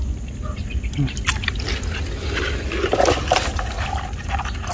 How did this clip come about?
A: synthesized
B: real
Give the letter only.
B